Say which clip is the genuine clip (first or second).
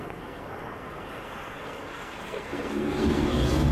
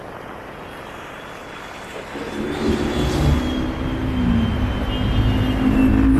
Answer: second